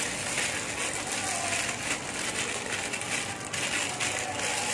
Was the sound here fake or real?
real